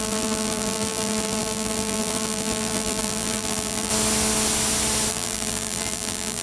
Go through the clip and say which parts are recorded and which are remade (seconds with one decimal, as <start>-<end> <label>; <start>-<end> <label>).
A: 0.0-3.9 remade; 3.9-5.1 recorded; 5.1-6.4 remade